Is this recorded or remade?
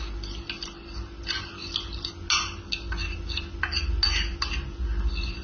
recorded